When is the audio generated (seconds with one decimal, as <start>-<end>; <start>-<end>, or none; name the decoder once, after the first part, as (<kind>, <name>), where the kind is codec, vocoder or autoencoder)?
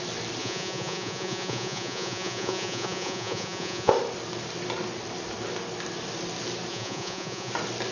0.4-3.9 (vocoder, Vocos); 6.7-7.5